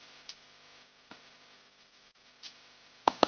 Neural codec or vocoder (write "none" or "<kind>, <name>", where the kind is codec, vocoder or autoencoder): none